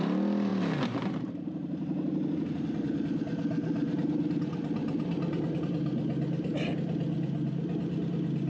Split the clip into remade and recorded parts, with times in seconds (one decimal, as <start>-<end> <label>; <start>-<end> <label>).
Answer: 0.0-8.5 recorded